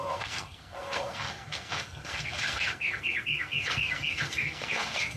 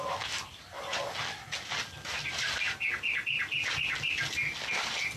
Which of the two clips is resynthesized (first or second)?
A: first